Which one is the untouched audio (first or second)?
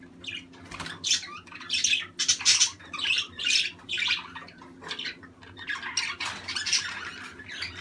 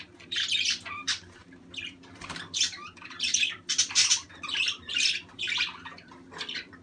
first